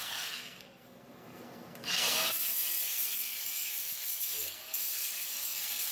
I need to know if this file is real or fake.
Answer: fake